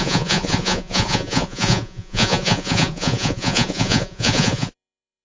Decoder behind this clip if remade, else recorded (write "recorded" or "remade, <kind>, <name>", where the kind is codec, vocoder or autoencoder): remade, vocoder, Vocos